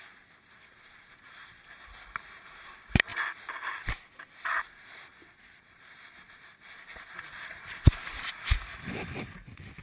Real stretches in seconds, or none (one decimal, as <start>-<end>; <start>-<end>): 0.0-9.8